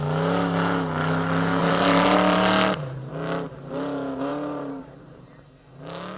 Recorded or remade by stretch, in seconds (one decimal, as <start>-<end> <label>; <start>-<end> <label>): 0.0-1.6 recorded; 1.6-3.1 remade; 3.1-4.3 recorded; 4.3-5.4 remade; 5.4-6.2 recorded